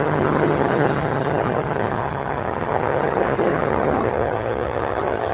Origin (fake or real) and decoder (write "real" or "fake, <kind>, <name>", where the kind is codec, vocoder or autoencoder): fake, vocoder, HiFi-GAN